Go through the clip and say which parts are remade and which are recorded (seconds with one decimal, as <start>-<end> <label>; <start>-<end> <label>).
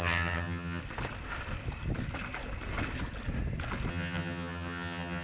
0.0-0.8 remade; 0.8-3.9 recorded; 3.9-5.2 remade